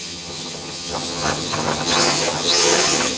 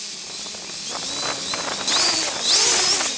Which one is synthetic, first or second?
first